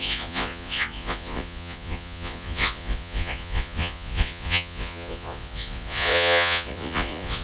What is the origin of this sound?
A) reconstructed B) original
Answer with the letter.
A